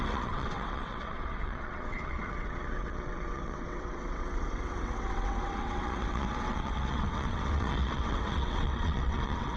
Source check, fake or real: fake